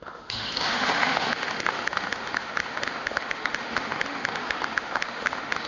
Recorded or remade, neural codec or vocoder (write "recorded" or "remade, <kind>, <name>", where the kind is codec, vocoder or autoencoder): remade, autoencoder, DAC-VAE